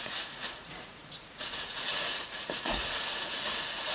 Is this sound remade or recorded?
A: remade